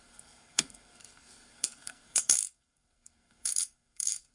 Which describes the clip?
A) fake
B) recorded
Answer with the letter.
A